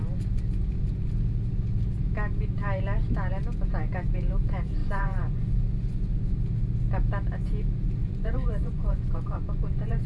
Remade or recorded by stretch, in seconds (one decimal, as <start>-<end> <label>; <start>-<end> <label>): 0.0-4.8 recorded; 4.8-5.6 remade; 5.6-8.0 recorded; 8.0-10.1 remade